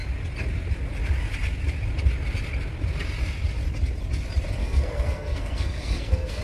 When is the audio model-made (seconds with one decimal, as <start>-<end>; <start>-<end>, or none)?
4.6-6.4